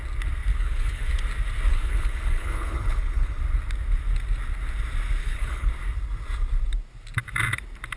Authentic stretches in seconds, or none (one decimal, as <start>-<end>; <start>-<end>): 0.0-0.5; 1.1-1.7; 3.4-5.2; 5.7-8.0